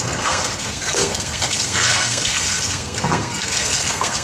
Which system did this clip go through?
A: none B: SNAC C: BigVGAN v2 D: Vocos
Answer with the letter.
B